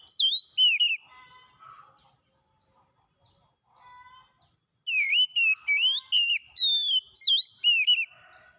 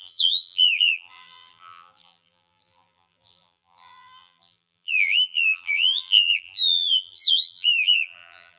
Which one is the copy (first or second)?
second